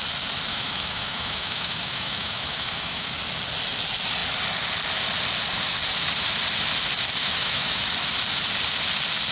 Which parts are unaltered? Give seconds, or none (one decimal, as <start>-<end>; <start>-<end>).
0.0-0.5; 3.1-7.2; 7.8-9.3